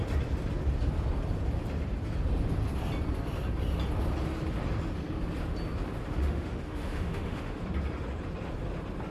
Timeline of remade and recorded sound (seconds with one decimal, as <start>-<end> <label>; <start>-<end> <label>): 0.0-6.1 recorded; 6.1-7.6 remade; 7.6-9.1 recorded

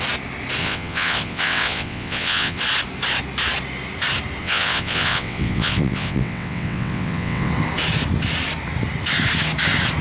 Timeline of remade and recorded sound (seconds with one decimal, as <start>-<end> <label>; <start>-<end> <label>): 0.0-0.6 recorded; 0.6-2.6 remade; 2.6-4.4 recorded; 4.4-7.5 remade; 7.5-10.0 recorded

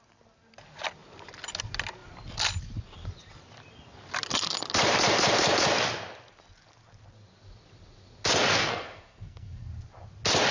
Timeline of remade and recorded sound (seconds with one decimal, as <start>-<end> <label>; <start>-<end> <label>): 0.0-8.6 recorded; 8.6-9.7 remade; 9.7-10.5 recorded

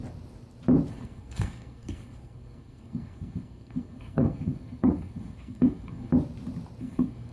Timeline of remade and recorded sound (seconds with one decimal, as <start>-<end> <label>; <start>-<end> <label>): 0.0-0.9 recorded; 0.9-6.1 remade; 6.1-6.8 recorded; 6.8-7.3 remade

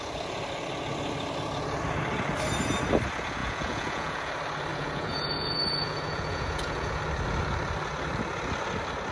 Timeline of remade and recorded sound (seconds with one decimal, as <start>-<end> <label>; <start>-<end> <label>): 0.0-3.4 recorded; 3.4-4.3 remade; 4.3-4.7 recorded; 4.7-7.0 remade; 7.0-9.1 recorded

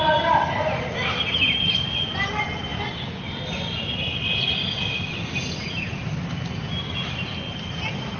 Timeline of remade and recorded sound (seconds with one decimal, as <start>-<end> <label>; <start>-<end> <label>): 0.0-8.2 recorded